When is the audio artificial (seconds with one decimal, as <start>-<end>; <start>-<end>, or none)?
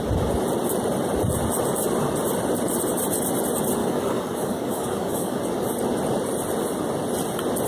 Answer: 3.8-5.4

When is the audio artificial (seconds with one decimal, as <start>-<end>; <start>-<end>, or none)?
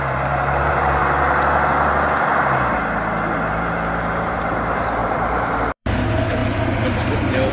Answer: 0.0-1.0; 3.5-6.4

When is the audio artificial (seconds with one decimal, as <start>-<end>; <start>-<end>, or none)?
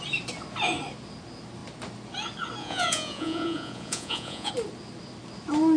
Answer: 2.6-4.5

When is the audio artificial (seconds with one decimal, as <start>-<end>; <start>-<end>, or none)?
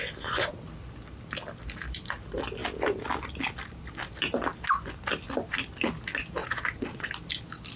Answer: 6.4-7.1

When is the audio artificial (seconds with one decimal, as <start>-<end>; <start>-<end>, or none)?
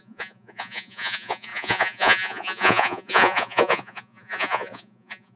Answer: 0.0-5.4